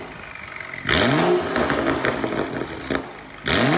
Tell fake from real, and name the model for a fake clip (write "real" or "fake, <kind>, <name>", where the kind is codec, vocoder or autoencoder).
real